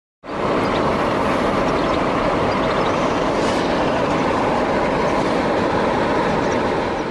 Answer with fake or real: real